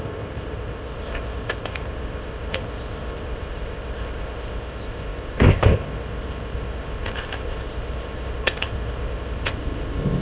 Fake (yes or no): yes